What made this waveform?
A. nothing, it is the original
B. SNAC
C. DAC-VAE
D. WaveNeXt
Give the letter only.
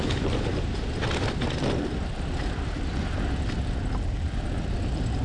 A